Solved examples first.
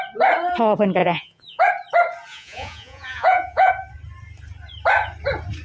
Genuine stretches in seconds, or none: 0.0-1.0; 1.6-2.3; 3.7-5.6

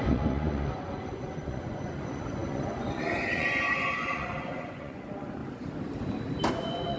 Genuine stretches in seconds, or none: 5.4-6.5